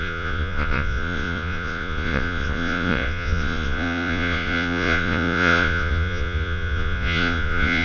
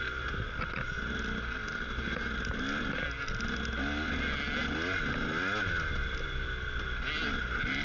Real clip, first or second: second